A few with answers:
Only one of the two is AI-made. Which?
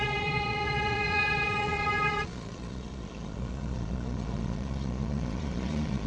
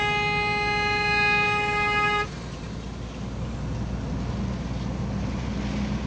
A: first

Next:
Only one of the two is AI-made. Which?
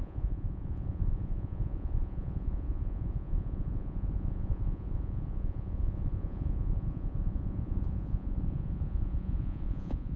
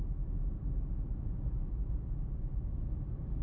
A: first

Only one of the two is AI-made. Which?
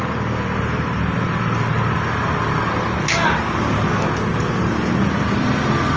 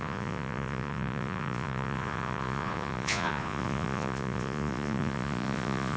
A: second